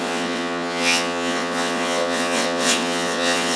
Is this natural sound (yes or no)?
no